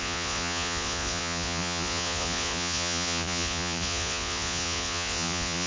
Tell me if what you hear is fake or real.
fake